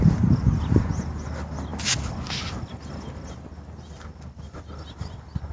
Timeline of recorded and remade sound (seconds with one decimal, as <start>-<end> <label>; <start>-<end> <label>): 0.0-5.5 recorded